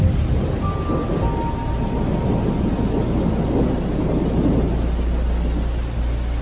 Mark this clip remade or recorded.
recorded